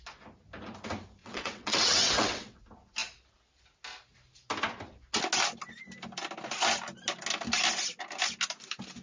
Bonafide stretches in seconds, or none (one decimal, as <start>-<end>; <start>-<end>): 0.0-1.2; 2.6-9.0

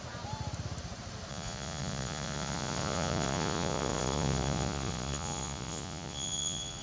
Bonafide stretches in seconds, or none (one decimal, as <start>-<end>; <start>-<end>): 0.0-1.3

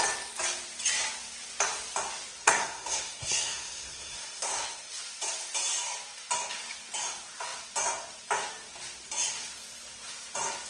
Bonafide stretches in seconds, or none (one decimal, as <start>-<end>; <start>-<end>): 0.0-2.4; 5.0-10.7

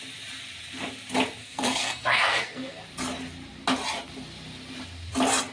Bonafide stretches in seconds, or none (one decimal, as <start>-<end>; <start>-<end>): 0.0-1.4; 2.8-5.5

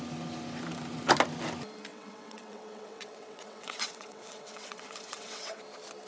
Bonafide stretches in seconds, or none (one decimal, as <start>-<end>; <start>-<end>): 0.0-1.9; 5.6-6.1

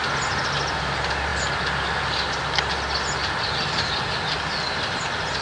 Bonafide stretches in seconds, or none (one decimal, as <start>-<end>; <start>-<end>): 0.0-5.4

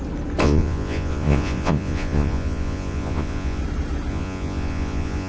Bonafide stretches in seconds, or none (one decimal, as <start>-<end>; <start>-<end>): 0.0-0.4; 3.6-4.1